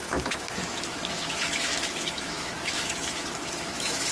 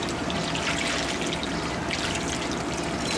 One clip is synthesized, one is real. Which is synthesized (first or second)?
first